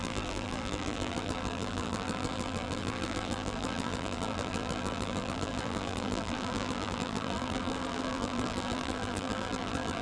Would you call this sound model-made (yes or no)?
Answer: yes